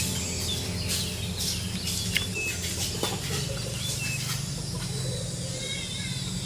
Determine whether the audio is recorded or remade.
recorded